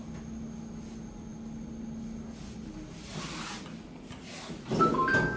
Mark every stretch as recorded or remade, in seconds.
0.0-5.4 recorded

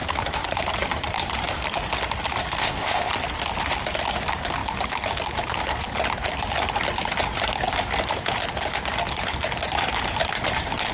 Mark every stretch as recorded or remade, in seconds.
0.0-2.6 recorded; 2.6-3.1 remade; 3.1-10.9 recorded

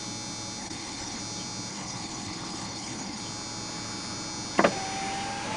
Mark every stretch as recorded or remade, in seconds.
0.0-0.6 recorded; 0.6-1.2 remade; 1.2-1.7 recorded; 1.7-3.2 remade; 3.2-5.6 recorded

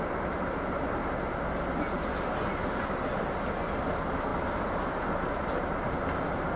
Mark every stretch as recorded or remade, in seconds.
0.0-1.0 remade; 1.0-3.8 recorded; 3.8-4.3 remade; 4.3-4.9 recorded; 4.9-6.6 remade

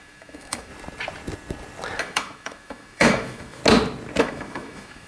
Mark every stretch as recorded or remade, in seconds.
0.0-0.7 remade; 0.7-2.0 recorded; 2.0-3.6 remade; 3.6-4.2 recorded; 4.2-5.1 remade

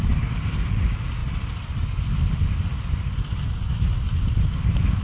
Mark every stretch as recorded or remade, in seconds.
0.0-5.0 recorded